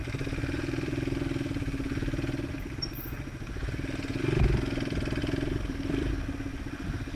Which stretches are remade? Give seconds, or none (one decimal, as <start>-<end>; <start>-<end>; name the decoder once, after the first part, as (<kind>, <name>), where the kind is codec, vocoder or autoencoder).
0.0-4.2 (vocoder, BigVGAN v2); 5.2-6.1; 6.5-7.2